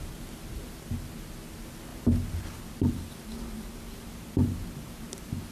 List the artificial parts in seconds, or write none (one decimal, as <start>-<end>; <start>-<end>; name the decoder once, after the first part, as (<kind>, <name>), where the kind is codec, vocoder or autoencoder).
none